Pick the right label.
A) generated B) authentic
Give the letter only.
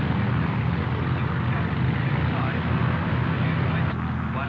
B